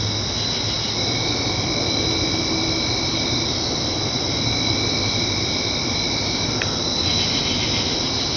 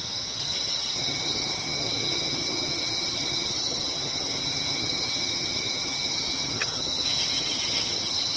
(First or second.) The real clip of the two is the first